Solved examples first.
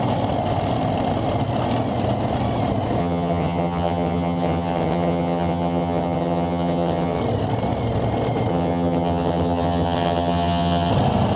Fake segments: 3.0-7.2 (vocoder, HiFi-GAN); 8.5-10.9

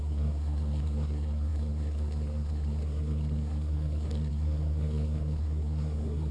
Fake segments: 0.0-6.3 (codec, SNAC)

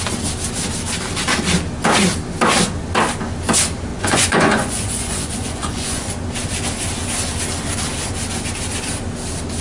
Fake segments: 3.9-6.1 (vocoder, Vocos)

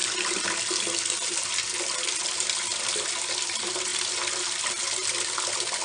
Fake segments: none

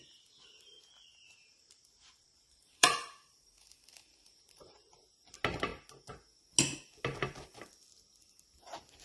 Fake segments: 1.4-4.9 (vocoder, BigVGAN v2)

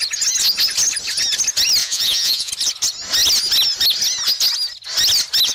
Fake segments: 1.8-2.5 (vocoder, Vocos)

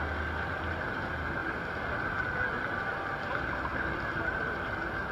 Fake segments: 1.4-2.5 (vocoder, BigVGAN v2); 3.7-5.1

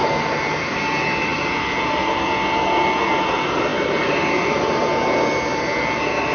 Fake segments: 0.0-0.8 (vocoder, BigVGAN v2); 3.7-4.3